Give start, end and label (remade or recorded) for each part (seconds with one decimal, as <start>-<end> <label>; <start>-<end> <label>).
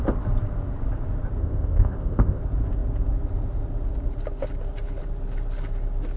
0.0-1.4 recorded; 1.4-2.4 remade; 2.4-6.2 recorded